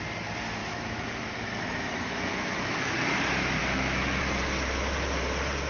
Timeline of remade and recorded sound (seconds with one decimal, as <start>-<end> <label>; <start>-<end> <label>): 0.0-0.6 recorded; 0.6-2.9 remade; 2.9-3.6 recorded; 3.6-4.2 remade; 4.2-5.7 recorded

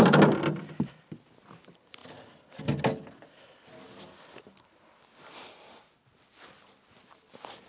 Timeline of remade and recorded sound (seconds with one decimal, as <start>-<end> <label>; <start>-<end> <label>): 0.0-7.7 recorded

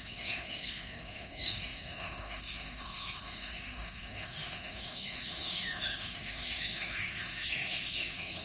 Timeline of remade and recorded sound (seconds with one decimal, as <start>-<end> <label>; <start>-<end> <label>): 0.0-8.4 remade

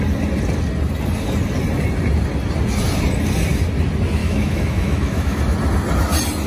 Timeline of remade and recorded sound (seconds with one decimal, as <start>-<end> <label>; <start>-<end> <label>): 0.0-4.2 recorded; 4.2-5.4 remade; 5.4-6.5 recorded

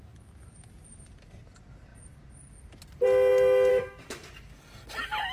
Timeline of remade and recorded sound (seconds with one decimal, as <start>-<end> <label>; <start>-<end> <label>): 0.0-3.7 recorded; 3.7-4.2 remade; 4.2-5.3 recorded

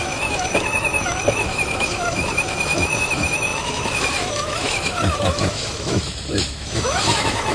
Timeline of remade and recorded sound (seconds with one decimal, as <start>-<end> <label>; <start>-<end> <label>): 0.0-7.5 remade

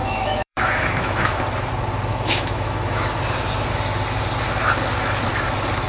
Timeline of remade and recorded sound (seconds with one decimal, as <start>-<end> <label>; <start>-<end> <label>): 0.0-1.4 remade; 1.4-2.1 recorded; 2.1-3.2 remade; 3.2-5.9 recorded